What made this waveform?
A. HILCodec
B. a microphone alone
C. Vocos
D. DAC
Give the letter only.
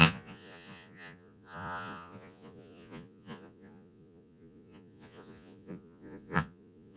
C